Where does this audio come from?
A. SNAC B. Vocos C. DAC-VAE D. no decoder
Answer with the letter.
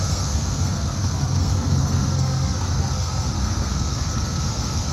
A